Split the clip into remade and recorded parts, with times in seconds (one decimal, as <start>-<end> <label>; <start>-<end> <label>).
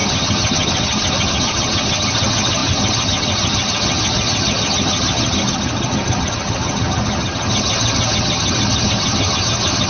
0.0-9.9 remade